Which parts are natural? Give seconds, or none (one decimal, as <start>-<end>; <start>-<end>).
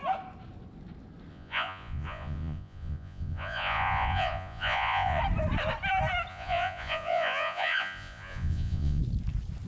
0.0-1.3; 5.2-6.3; 9.0-9.7